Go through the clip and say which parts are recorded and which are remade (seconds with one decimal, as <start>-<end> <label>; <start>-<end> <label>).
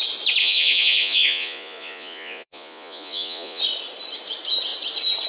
0.0-0.4 recorded; 0.4-3.6 remade; 3.6-5.3 recorded